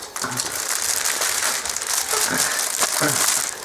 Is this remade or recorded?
recorded